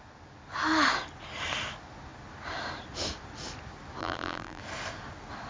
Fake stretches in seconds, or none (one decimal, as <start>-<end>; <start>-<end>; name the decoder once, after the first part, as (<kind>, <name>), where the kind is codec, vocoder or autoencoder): 4.0-4.6 (vocoder, BigVGAN v2)